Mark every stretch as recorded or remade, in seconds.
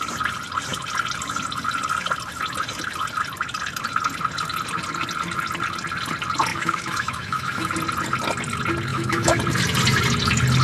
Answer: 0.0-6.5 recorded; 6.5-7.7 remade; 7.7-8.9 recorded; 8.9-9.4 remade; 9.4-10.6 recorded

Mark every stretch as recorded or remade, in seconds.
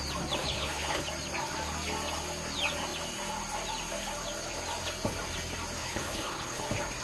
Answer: 0.0-0.4 recorded; 0.4-1.0 remade; 1.0-5.8 recorded; 5.8-6.6 remade; 6.6-7.0 recorded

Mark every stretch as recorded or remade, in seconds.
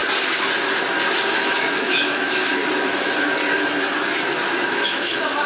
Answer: 0.0-1.3 recorded; 1.3-2.6 remade; 2.6-4.7 recorded; 4.7-5.5 remade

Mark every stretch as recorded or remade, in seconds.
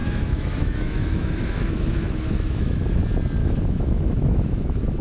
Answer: 0.0-3.0 remade; 3.0-3.4 recorded; 3.4-5.0 remade